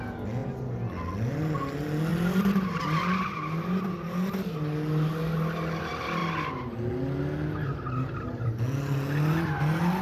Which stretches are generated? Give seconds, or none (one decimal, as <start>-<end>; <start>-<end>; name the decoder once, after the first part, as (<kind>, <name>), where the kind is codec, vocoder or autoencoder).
none